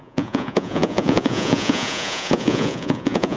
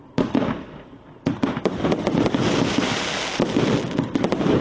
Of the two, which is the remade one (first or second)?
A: first